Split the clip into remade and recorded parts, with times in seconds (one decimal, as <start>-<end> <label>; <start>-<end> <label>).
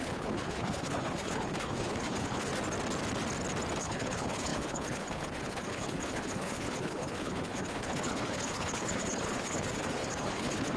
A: 0.0-2.5 remade; 2.5-3.8 recorded; 3.8-10.8 remade